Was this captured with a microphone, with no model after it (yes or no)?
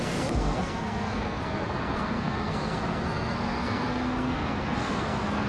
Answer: no